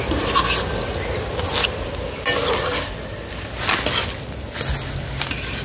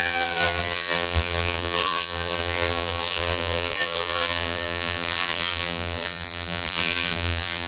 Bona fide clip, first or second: first